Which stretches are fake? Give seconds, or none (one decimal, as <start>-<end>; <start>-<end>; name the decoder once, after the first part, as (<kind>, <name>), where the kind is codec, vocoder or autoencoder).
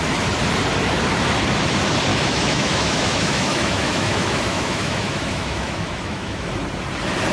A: 2.1-6.5 (autoencoder, DAC-VAE)